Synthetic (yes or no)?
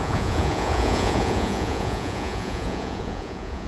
yes